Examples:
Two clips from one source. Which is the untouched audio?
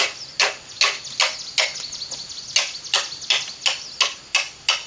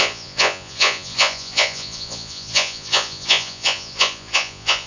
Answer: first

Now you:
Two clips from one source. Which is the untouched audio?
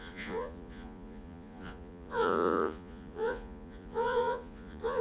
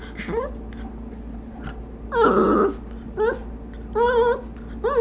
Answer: second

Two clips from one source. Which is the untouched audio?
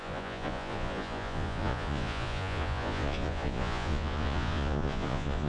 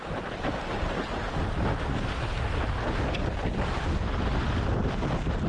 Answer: second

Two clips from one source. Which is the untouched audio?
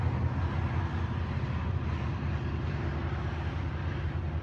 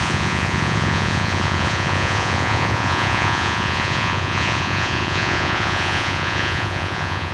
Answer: first